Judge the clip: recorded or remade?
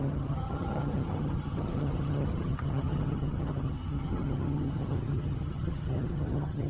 remade